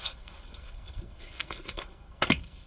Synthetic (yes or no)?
yes